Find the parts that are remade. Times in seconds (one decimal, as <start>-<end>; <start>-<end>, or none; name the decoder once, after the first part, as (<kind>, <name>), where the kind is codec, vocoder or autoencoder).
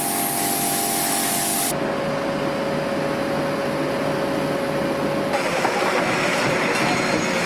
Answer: none